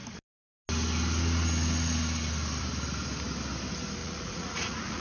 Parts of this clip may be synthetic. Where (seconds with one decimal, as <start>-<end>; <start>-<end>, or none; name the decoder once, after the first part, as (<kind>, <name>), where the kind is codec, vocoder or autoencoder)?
4.0-5.0 (vocoder, Vocos)